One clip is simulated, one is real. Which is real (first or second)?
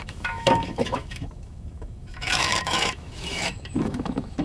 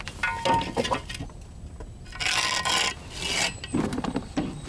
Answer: second